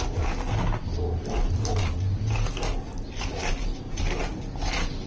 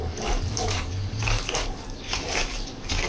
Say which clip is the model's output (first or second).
second